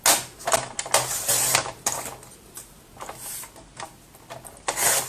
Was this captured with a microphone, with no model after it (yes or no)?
yes